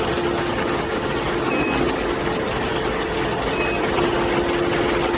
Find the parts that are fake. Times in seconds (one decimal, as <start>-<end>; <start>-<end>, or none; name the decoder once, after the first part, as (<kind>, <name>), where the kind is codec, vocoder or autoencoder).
none